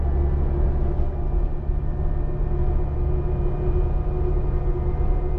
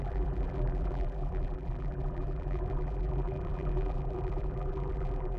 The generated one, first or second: second